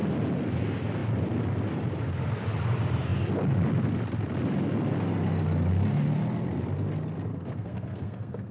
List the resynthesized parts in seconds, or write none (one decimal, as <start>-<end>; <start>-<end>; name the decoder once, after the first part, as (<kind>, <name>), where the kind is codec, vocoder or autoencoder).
7.3-8.5 (codec, SNAC)